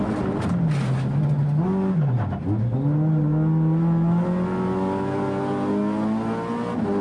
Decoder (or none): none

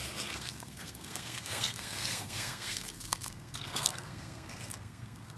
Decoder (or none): codec, SNAC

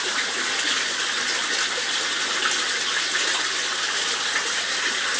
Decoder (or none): none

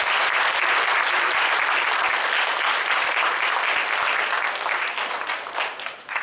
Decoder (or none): none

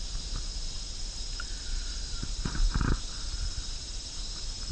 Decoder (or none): none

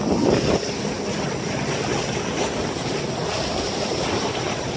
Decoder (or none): none